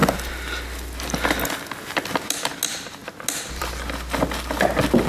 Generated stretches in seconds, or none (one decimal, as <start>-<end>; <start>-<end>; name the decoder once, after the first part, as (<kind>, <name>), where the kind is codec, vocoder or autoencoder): none